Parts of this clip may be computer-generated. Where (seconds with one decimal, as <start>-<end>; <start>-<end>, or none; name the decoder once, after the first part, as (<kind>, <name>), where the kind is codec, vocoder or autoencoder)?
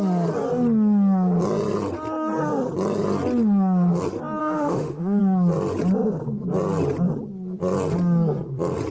4.4-5.2 (autoencoder, DAC-VAE)